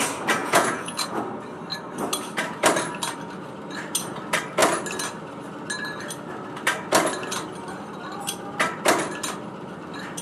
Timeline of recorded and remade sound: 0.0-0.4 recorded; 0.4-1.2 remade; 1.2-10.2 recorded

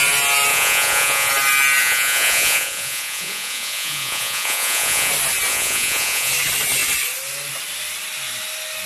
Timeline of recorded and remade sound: 0.0-0.5 recorded; 0.5-1.3 remade; 1.3-1.8 recorded; 1.8-5.1 remade; 5.1-5.5 recorded; 5.5-6.3 remade; 6.3-8.9 recorded

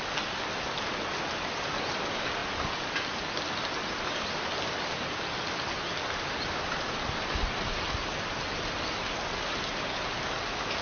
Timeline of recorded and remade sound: 0.0-10.8 recorded

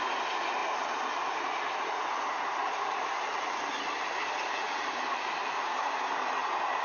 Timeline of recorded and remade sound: 0.0-6.8 recorded

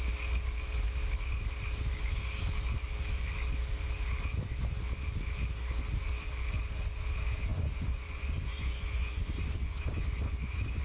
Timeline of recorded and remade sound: 0.0-7.5 recorded; 7.5-10.8 remade

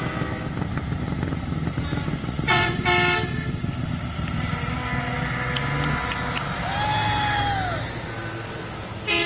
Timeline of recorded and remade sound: 0.0-2.1 recorded; 2.1-2.8 remade; 2.8-9.3 recorded